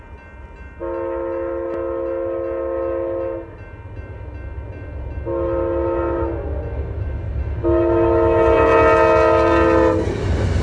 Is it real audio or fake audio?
real